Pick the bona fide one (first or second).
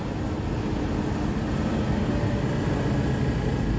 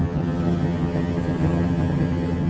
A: first